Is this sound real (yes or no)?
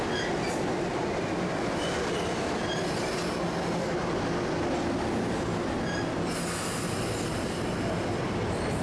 yes